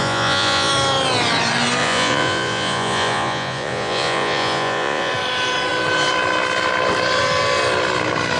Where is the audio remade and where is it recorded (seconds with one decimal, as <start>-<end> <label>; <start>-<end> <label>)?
0.0-0.7 remade; 0.7-1.8 recorded; 1.8-5.1 remade; 5.1-8.4 recorded

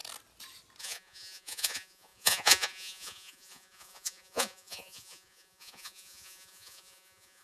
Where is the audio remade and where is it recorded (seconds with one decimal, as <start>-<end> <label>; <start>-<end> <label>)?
0.0-0.8 recorded; 0.8-7.4 remade

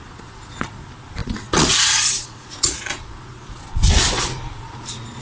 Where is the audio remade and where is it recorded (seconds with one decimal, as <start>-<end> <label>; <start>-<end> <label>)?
0.0-5.2 remade

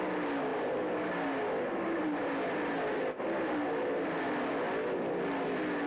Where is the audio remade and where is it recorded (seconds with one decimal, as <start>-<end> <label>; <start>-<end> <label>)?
0.0-5.9 recorded